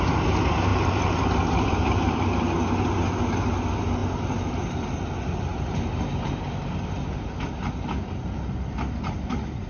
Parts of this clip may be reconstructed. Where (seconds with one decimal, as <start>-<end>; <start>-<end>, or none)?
0.7-2.2